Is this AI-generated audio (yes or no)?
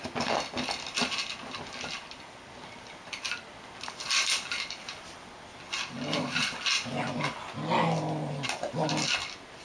no